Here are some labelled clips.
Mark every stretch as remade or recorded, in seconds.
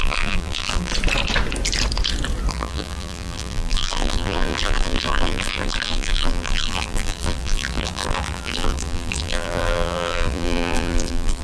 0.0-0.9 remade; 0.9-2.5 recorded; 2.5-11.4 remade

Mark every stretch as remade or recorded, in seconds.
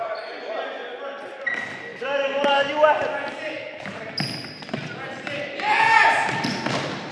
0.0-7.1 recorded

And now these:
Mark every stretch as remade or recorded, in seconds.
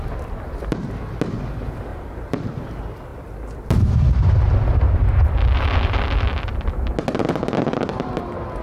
0.0-1.9 recorded; 1.9-2.6 remade; 2.6-8.6 recorded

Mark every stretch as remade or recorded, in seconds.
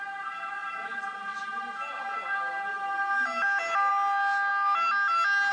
0.0-5.5 recorded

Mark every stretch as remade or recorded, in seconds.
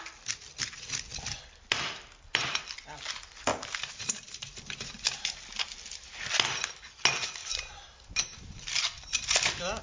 0.0-3.5 recorded; 3.5-5.3 remade; 5.3-7.4 recorded; 7.4-8.8 remade; 8.8-9.8 recorded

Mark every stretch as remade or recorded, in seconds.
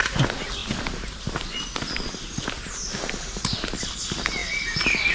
0.0-5.1 recorded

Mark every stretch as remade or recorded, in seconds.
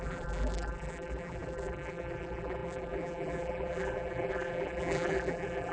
0.0-5.7 remade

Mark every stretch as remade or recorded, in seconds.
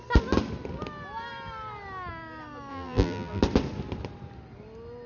0.0-2.7 recorded; 2.7-3.4 remade; 3.4-5.1 recorded